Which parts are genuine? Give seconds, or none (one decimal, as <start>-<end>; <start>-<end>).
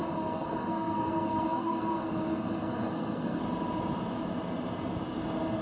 3.4-5.6